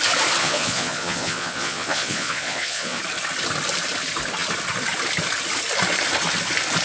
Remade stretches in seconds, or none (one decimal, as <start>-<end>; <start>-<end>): 0.4-3.0